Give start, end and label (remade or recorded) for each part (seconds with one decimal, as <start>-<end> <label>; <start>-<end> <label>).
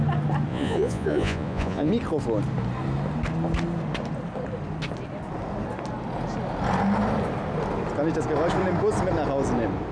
0.0-0.5 recorded; 0.5-1.9 remade; 1.9-9.9 recorded